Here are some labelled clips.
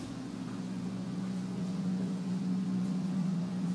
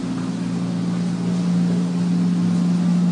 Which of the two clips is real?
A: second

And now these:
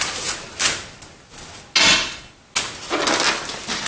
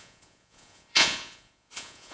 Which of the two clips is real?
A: first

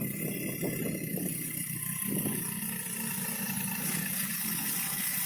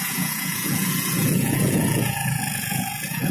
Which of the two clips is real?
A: first